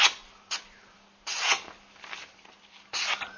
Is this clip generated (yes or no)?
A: no